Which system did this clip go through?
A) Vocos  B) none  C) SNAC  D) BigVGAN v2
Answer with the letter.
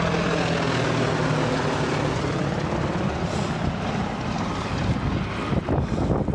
B